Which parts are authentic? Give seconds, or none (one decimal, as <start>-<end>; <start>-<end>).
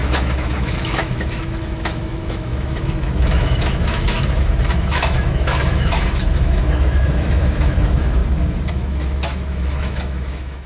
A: 8.2-8.7